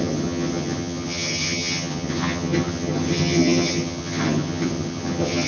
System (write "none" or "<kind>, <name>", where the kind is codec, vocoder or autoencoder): vocoder, HiFi-GAN